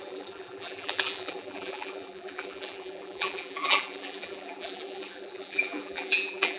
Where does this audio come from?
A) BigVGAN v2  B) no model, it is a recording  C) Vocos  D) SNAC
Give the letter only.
A